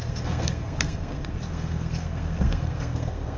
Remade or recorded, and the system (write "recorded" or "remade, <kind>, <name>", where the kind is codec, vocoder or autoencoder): remade, codec, SNAC